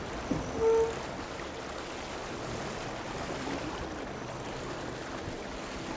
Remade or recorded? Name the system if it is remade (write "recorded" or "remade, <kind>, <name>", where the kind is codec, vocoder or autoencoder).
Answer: recorded